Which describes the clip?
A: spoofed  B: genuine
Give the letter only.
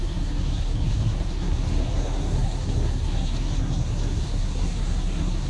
A